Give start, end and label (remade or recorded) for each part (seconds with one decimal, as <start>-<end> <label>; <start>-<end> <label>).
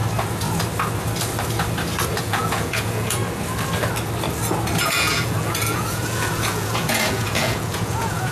0.0-2.2 recorded; 2.2-3.2 remade; 3.2-4.8 recorded; 4.8-8.3 remade